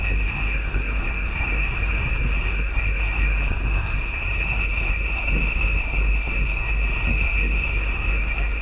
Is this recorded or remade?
remade